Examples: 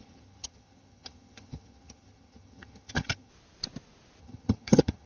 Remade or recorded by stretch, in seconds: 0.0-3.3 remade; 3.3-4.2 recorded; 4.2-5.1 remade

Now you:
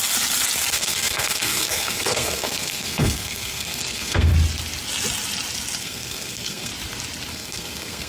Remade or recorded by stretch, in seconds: 0.0-0.7 recorded; 0.7-4.3 remade; 4.3-5.8 recorded; 5.8-6.7 remade; 6.7-7.3 recorded; 7.3-8.1 remade

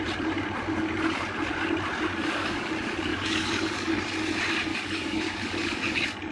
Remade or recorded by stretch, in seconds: 0.0-2.1 recorded; 2.1-2.7 remade; 2.7-3.1 recorded; 3.1-3.9 remade; 3.9-4.7 recorded; 4.7-6.3 remade

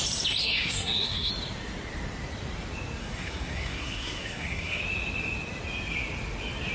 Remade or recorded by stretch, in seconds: 0.0-0.4 recorded; 0.4-1.3 remade; 1.3-3.0 recorded; 3.0-4.8 remade; 4.8-6.7 recorded

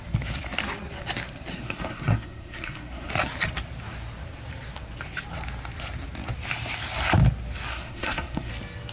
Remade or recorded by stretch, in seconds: 0.0-1.5 recorded; 1.5-3.1 remade; 3.1-7.7 recorded; 7.7-8.5 remade; 8.5-8.9 recorded